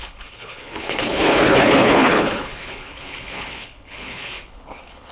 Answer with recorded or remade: remade